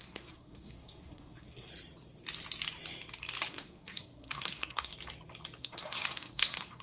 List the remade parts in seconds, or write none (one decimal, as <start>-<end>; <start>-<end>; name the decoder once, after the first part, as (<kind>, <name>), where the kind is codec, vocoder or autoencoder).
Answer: 0.0-1.7 (codec, SNAC); 3.5-4.9; 5.6-6.8